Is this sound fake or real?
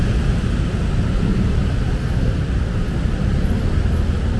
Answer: real